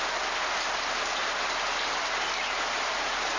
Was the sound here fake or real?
real